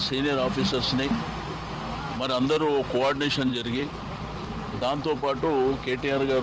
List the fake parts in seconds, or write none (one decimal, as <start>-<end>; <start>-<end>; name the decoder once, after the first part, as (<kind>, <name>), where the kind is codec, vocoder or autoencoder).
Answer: 3.5-4.1 (vocoder, BigVGAN v2)